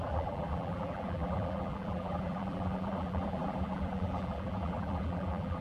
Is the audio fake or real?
fake